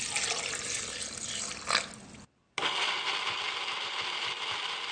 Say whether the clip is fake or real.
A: real